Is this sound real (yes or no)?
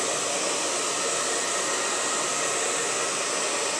yes